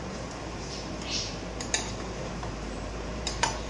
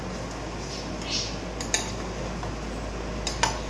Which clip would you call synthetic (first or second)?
first